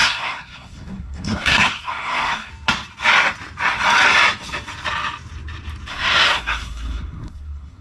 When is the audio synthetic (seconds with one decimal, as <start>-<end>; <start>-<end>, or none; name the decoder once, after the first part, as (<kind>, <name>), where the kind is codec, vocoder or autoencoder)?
0.0-2.5 (codec, SNAC); 5.9-7.8